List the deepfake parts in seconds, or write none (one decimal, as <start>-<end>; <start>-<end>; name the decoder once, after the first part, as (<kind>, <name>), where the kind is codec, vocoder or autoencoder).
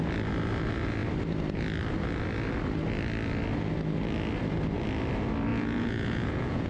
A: 5.5-6.7 (vocoder, Vocos)